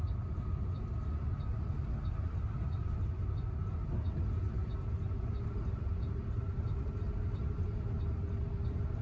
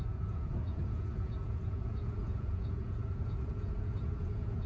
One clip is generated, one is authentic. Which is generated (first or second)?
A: second